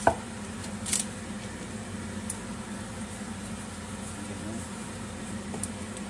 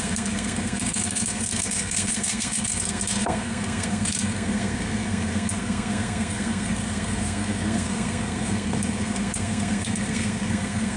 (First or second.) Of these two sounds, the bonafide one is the first